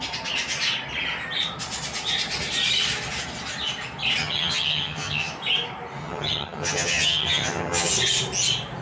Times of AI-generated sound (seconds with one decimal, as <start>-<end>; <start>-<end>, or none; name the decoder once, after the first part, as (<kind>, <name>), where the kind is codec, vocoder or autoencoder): 4.2-5.3 (vocoder, HiFi-GAN); 6.0-7.9